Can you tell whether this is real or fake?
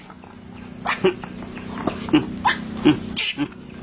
real